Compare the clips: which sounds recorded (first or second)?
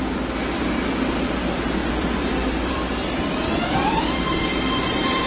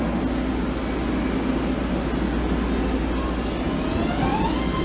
second